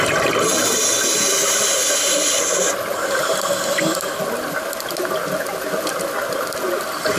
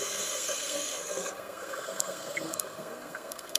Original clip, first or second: first